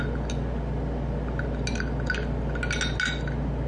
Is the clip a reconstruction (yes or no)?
no